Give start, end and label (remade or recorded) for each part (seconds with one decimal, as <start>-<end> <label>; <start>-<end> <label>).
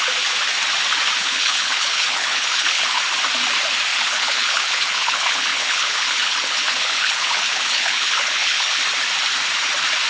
0.0-1.2 recorded; 1.2-3.0 remade; 3.0-3.9 recorded; 3.9-8.8 remade; 8.8-10.1 recorded